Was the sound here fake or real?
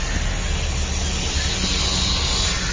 real